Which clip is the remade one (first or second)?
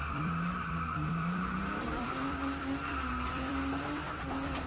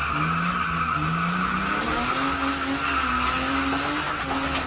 first